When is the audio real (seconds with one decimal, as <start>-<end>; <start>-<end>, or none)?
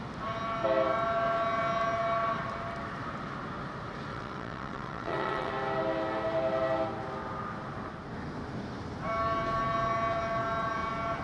0.0-4.1; 5.5-11.2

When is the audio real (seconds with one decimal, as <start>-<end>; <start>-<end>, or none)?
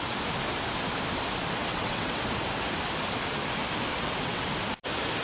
0.0-1.7; 2.2-3.9; 4.5-5.2